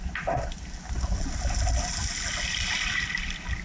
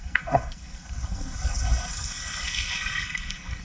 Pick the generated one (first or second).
second